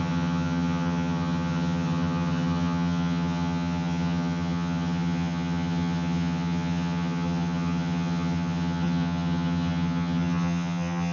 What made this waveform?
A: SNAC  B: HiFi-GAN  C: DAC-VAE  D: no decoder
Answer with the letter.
B